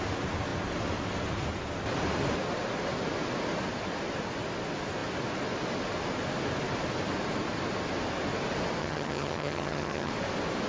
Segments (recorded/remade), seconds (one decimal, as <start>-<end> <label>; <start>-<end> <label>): 0.0-8.8 recorded; 8.8-10.1 remade; 10.1-10.7 recorded